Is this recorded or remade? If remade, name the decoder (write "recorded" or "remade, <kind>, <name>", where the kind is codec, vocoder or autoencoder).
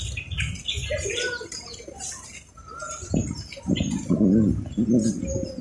recorded